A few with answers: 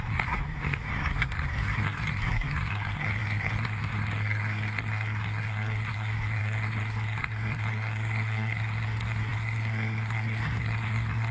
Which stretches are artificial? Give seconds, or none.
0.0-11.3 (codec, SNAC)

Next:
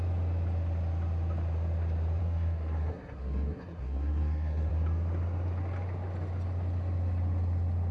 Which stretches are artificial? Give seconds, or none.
2.2-4.7 (codec, SNAC)

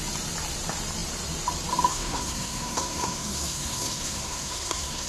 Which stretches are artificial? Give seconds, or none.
1.9-5.1 (codec, SNAC)